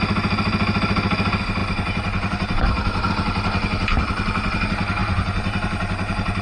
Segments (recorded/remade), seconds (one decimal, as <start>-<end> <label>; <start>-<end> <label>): 0.0-1.6 recorded; 1.6-3.1 remade; 3.1-5.0 recorded; 5.0-6.4 remade